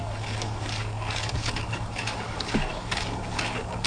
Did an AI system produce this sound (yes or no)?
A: yes